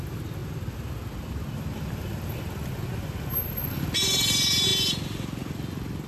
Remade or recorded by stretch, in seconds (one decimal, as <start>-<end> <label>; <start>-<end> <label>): 0.0-6.1 recorded